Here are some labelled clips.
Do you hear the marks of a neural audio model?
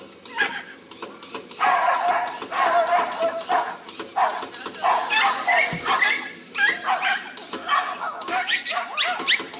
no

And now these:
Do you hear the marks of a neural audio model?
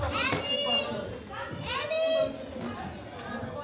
no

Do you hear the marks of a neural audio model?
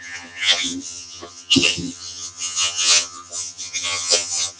yes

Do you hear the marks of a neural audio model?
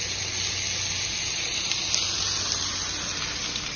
no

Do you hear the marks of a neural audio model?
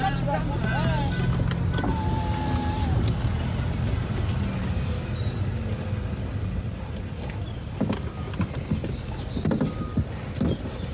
no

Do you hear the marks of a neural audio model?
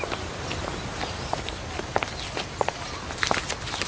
no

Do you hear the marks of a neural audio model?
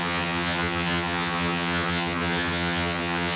yes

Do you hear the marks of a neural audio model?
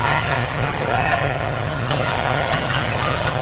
yes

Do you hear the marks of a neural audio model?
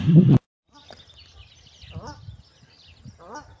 no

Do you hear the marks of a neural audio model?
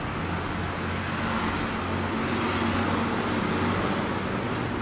no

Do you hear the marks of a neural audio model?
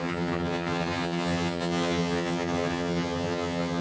yes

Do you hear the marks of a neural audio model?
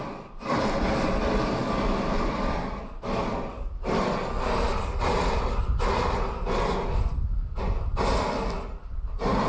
no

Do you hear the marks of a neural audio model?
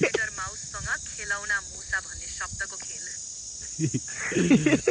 no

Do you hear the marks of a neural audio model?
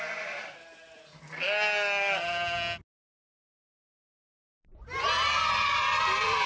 no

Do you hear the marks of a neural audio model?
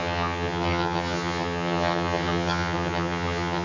yes